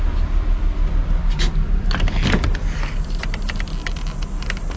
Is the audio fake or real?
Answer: real